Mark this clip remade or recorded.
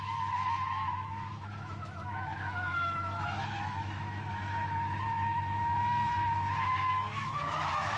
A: remade